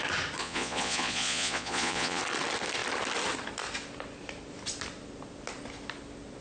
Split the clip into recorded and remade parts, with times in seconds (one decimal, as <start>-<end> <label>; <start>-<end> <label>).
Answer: 0.0-0.4 recorded; 0.4-2.2 remade; 2.2-6.4 recorded

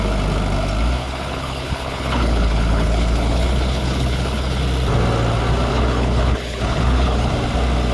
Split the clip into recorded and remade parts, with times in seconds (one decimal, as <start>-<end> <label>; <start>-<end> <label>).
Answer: 0.0-1.0 recorded; 1.0-4.6 remade; 4.6-5.7 recorded; 5.7-7.3 remade; 7.3-7.9 recorded

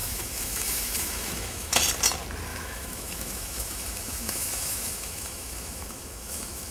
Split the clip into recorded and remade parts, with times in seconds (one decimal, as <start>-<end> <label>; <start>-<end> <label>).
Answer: 0.0-1.8 remade; 1.8-2.5 recorded; 2.5-6.7 remade

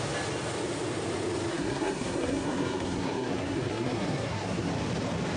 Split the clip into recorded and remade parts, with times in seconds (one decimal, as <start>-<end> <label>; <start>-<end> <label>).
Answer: 0.0-1.5 recorded; 1.5-4.7 remade; 4.7-5.4 recorded

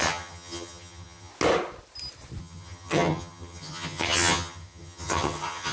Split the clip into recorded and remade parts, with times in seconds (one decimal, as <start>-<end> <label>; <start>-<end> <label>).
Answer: 0.0-1.3 remade; 1.3-2.4 recorded; 2.4-5.7 remade

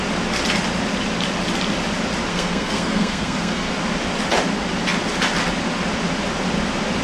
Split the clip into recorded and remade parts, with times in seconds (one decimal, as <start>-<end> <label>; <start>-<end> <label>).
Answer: 0.0-2.3 recorded; 2.3-3.7 remade; 3.7-7.0 recorded

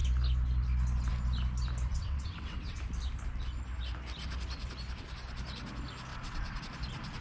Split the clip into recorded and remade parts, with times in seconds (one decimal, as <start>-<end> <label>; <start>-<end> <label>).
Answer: 0.0-1.9 recorded; 1.9-2.8 remade; 2.8-6.1 recorded; 6.1-6.6 remade; 6.6-7.2 recorded

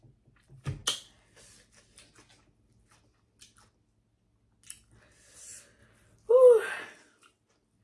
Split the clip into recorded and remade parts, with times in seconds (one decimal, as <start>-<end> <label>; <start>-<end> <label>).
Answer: 0.0-7.8 recorded